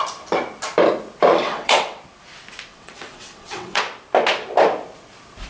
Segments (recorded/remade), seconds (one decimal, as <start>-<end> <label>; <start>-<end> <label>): 0.0-1.3 recorded; 1.3-2.0 remade; 2.0-2.7 recorded; 2.7-3.8 remade; 3.8-5.5 recorded